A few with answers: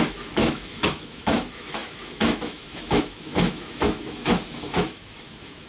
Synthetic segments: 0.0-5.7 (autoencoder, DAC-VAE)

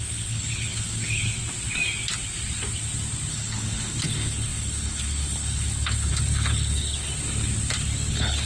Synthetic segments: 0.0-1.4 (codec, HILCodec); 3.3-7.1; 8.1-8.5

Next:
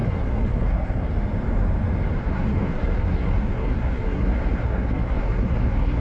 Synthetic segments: 0.0-1.1 (codec, SNAC); 2.2-6.0

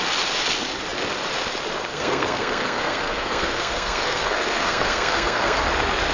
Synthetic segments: 1.9-5.6 (codec, SNAC)

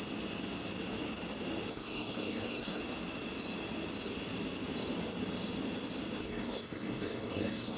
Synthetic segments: 1.7-2.8 (codec, SNAC); 6.2-7.8

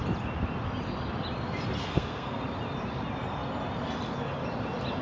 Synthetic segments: 1.8-2.4 (codec, SNAC)

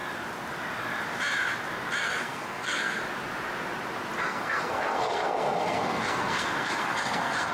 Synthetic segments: 2.0-3.0 (codec, SNAC); 4.2-7.5

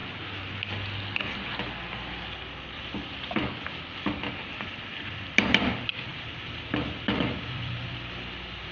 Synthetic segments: 1.9-8.7 (vocoder, BigVGAN v2)